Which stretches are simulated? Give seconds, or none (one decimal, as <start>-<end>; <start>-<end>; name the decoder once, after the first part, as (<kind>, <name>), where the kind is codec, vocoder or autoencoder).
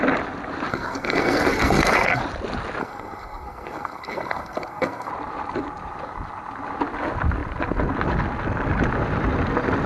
0.7-2.2 (codec, SNAC); 2.8-5.1